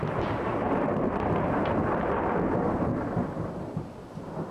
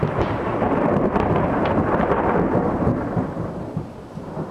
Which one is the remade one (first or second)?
second